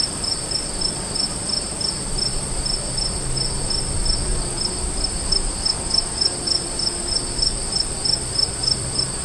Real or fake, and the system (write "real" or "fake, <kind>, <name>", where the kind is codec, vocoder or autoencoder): fake, vocoder, BigVGAN v2